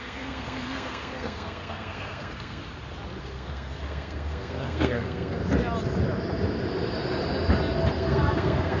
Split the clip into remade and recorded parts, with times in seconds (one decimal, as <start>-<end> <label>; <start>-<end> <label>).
0.0-2.6 remade; 2.6-3.2 recorded; 3.2-5.4 remade; 5.4-7.9 recorded; 7.9-8.8 remade